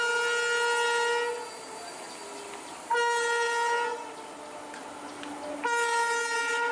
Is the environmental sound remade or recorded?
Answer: recorded